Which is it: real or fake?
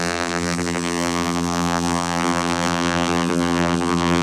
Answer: fake